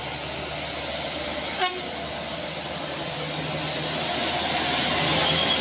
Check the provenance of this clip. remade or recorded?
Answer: recorded